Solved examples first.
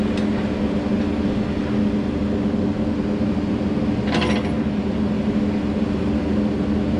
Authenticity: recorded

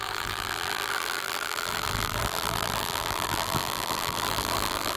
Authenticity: remade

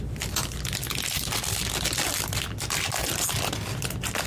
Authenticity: recorded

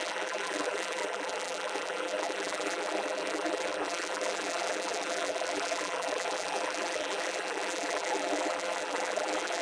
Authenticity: remade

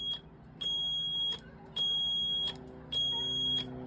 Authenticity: recorded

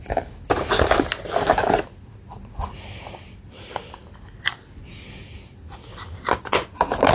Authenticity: recorded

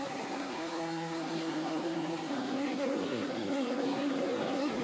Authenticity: remade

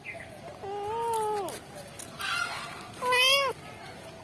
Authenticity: recorded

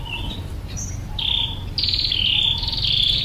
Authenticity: recorded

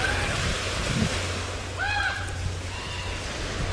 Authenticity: recorded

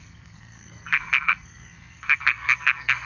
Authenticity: remade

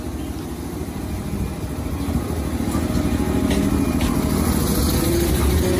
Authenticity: recorded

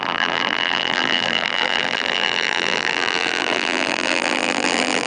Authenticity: remade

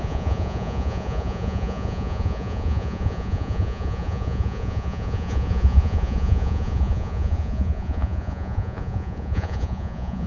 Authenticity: remade